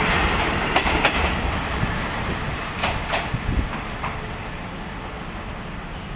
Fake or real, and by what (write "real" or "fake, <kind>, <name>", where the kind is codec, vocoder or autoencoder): real